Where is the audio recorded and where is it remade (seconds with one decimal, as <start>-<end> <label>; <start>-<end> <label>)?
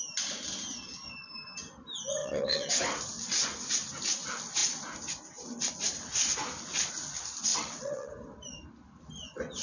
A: 0.0-2.2 recorded; 2.2-2.7 remade; 2.7-7.5 recorded; 7.5-8.1 remade; 8.1-9.6 recorded